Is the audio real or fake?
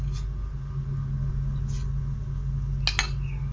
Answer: real